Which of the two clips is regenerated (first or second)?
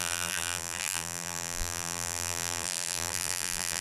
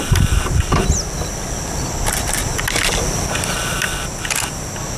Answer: first